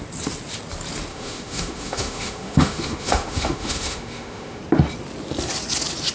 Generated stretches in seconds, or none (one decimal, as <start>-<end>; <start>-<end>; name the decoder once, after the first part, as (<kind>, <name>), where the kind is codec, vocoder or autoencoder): 1.1-4.6 (autoencoder, DAC-VAE)